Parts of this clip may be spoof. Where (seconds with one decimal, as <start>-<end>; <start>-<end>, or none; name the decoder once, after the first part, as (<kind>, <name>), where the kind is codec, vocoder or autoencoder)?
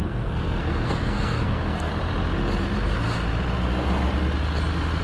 0.0-1.9 (codec, SNAC)